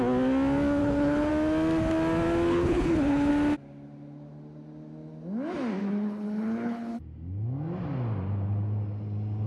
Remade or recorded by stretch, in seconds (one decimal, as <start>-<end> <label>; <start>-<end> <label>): 0.0-0.8 recorded; 0.8-1.3 remade; 1.3-2.5 recorded; 2.5-3.3 remade; 3.3-5.8 recorded; 5.8-7.0 remade; 7.0-9.5 recorded